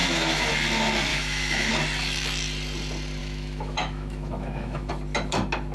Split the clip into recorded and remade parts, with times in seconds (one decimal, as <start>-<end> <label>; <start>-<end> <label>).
0.0-0.5 remade; 0.5-1.1 recorded; 1.1-1.7 remade; 1.7-3.2 recorded; 3.2-4.9 remade; 4.9-5.7 recorded